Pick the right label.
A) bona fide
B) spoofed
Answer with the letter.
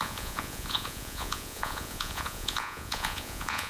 B